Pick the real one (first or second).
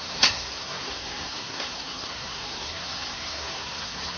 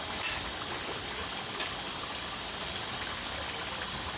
second